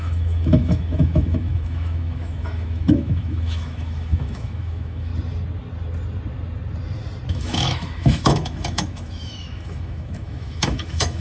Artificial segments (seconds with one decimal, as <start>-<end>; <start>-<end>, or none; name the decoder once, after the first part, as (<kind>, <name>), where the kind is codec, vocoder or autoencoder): 0.0-5.1 (autoencoder, DAC-VAE); 7.3-11.2

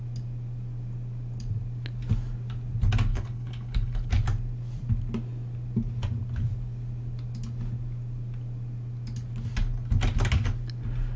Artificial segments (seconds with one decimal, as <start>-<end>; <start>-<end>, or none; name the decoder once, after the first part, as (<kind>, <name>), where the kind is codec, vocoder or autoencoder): 3.1-4.1 (codec, HILCodec)